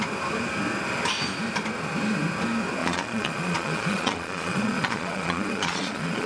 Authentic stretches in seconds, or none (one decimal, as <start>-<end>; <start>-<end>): 0.0-2.8